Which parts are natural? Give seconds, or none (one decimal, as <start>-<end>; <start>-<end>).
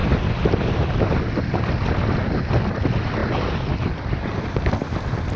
0.0-5.4